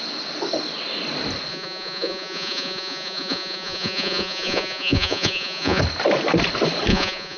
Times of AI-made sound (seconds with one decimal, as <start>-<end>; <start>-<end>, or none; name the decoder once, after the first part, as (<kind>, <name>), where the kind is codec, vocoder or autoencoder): 1.5-5.8 (vocoder, Vocos); 6.9-7.4